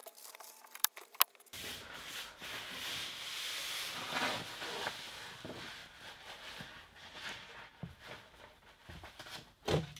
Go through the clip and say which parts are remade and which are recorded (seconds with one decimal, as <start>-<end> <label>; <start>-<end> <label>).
0.0-1.2 remade; 1.2-8.8 recorded; 8.8-10.0 remade